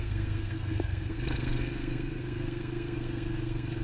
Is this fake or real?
fake